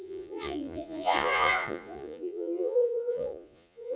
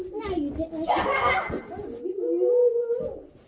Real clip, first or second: second